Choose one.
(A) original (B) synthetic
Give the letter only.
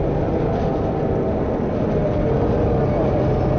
A